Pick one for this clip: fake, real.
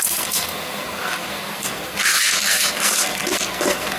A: fake